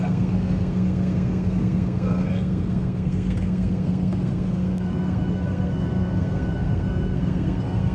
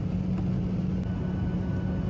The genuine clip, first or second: second